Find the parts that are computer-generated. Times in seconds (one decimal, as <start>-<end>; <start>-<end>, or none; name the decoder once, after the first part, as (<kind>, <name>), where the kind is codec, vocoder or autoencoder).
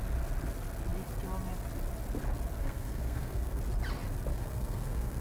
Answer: 2.6-3.6 (codec, SNAC); 4.3-5.2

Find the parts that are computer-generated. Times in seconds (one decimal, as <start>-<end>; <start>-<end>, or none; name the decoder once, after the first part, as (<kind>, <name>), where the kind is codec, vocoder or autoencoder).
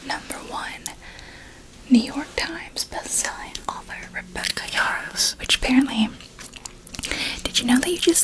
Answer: 3.2-3.7 (codec, SNAC); 4.5-5.4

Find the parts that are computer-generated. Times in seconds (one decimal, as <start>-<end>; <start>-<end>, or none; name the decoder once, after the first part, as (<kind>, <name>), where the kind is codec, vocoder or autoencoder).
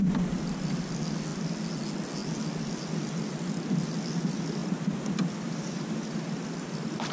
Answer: none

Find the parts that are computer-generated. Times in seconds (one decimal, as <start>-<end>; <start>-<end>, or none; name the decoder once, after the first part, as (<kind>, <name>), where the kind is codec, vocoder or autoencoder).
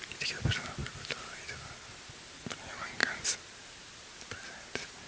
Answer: none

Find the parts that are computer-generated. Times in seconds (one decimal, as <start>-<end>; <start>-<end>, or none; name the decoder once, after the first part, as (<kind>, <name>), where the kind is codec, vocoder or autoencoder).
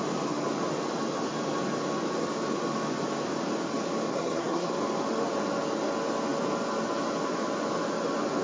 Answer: 4.1-4.7 (codec, SNAC)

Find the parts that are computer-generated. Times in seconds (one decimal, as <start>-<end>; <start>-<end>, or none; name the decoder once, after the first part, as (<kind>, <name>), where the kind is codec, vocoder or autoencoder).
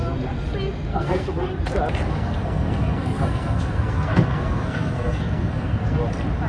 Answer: 0.9-1.5 (codec, SNAC); 2.1-6.0